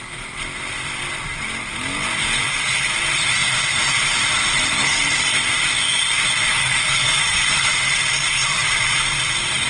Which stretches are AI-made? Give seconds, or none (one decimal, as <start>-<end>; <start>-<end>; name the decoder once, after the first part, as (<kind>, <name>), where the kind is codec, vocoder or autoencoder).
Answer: 6.5-7.7 (codec, DAC)